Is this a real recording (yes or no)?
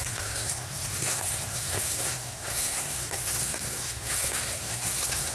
no